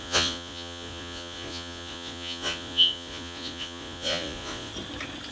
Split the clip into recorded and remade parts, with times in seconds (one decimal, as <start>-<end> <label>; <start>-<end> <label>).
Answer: 0.0-4.7 remade; 4.7-5.3 recorded